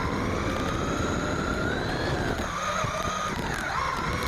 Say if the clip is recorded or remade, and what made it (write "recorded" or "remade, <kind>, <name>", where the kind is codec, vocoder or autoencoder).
recorded